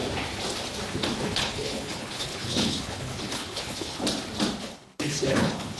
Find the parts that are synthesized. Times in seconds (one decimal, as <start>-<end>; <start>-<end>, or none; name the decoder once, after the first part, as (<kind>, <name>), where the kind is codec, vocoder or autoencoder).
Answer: 1.2-4.0 (codec, HILCodec); 4.6-5.8